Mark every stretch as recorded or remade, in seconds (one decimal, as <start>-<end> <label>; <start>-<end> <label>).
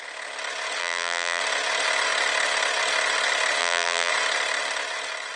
0.0-0.8 recorded; 0.8-1.4 remade; 1.4-3.6 recorded; 3.6-4.1 remade; 4.1-5.4 recorded